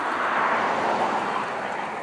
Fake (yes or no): no